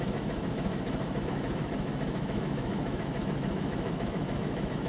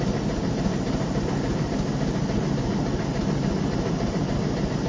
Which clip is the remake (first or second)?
first